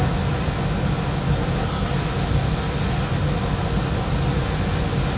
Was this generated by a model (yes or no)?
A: no